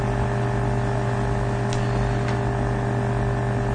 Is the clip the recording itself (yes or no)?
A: yes